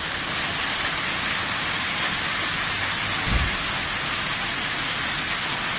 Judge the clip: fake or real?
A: real